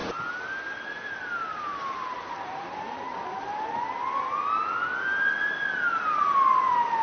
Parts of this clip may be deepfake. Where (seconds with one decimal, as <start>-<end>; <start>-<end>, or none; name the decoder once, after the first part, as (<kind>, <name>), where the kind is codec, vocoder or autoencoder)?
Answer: none